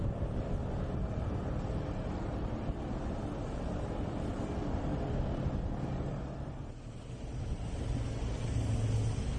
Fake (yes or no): no